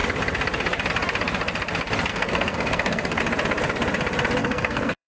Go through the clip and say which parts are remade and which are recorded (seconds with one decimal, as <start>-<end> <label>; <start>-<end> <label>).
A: 0.0-2.1 recorded; 2.1-3.2 remade; 3.2-4.4 recorded; 4.4-5.1 remade